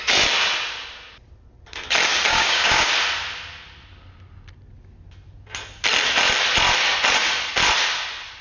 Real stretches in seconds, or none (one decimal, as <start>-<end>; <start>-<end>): 0.0-2.3; 2.9-8.4